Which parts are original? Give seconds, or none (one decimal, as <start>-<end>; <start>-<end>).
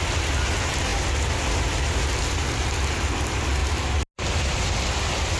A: 0.0-5.4